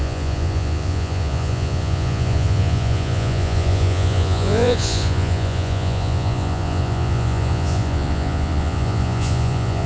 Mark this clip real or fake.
fake